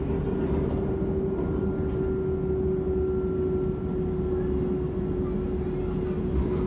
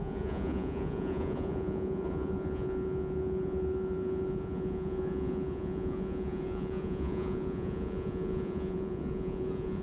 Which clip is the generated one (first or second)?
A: second